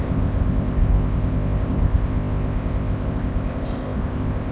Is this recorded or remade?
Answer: remade